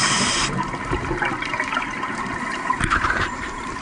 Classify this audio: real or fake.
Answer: fake